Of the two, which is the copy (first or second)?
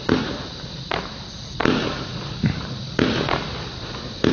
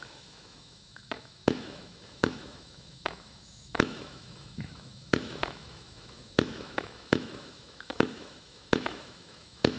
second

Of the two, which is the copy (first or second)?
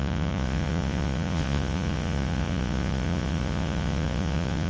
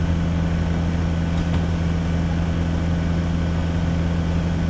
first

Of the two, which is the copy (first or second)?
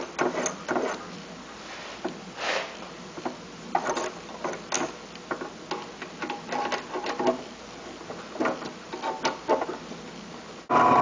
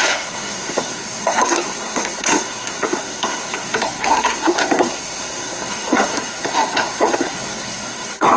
second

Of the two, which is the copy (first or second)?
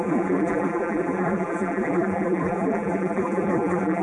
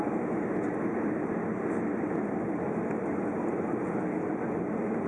first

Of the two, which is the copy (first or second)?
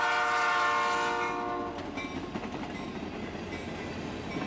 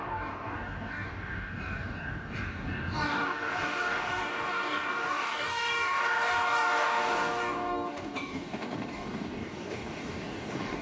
second